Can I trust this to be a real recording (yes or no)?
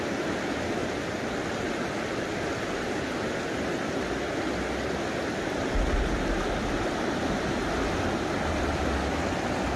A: yes